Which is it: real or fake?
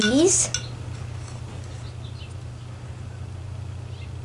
real